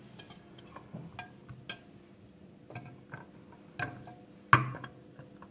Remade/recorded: recorded